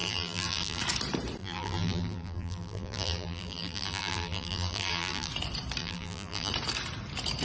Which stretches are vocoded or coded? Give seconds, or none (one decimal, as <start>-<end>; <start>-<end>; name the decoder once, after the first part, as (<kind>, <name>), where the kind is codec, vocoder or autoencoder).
0.0-0.8 (vocoder, BigVGAN v2); 1.4-5.3; 5.8-6.5